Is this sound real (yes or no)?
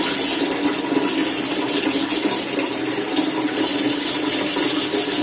yes